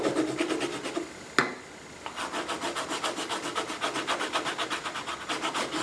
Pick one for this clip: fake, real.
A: real